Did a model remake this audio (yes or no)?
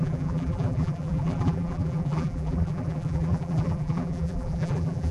yes